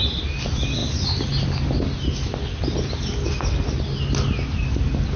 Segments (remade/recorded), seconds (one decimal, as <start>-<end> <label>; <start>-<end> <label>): 0.0-5.2 recorded